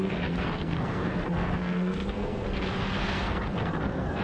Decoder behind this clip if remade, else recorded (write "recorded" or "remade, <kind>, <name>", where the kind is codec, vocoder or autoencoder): remade, codec, SNAC